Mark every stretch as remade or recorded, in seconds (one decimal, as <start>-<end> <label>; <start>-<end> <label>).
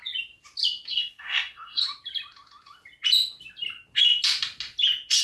0.0-0.9 recorded; 0.9-1.8 remade; 1.8-5.2 recorded